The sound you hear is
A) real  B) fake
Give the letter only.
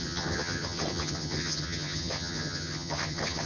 B